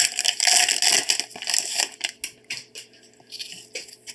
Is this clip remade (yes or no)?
no